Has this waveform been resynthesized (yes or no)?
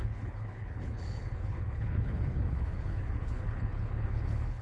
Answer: yes